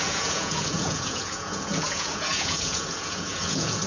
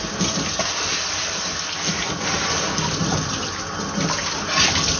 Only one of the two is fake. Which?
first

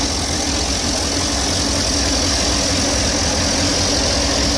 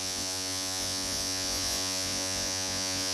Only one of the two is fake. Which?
second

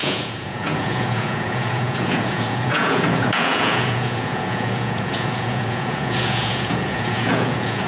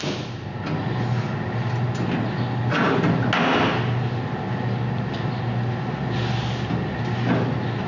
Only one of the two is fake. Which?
first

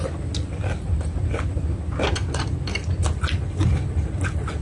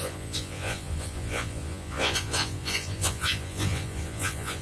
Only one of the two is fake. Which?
second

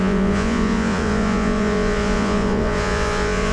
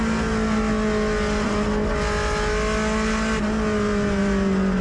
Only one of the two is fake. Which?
first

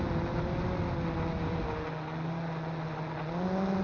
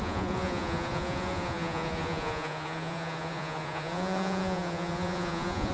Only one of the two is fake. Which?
second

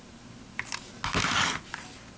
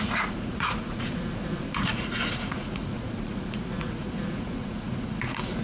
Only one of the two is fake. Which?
second